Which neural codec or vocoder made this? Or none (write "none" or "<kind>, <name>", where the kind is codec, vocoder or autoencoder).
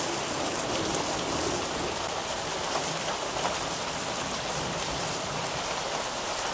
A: none